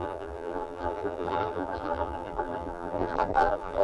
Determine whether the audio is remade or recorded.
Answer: remade